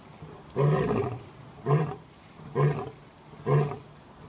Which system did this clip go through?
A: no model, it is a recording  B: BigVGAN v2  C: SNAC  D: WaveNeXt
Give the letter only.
A